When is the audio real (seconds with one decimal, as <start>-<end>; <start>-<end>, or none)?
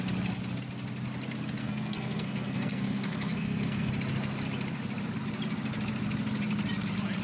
0.0-1.6; 3.9-7.2